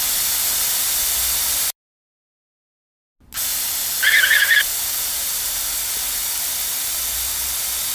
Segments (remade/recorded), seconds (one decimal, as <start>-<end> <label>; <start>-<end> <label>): 0.0-7.9 recorded

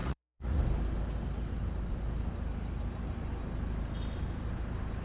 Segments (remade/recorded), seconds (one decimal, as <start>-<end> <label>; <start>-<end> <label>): 0.0-0.6 remade; 0.6-5.0 recorded

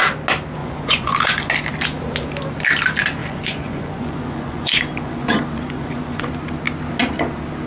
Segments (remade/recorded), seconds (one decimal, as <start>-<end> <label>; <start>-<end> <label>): 0.0-0.6 recorded; 0.6-1.5 remade; 1.5-3.2 recorded; 3.2-6.3 remade; 6.3-7.7 recorded